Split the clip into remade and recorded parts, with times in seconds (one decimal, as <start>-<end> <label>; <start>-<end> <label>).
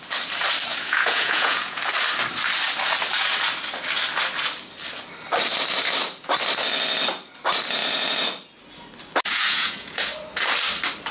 0.0-0.7 recorded; 0.7-1.8 remade; 1.8-9.3 recorded; 9.3-10.0 remade; 10.0-11.1 recorded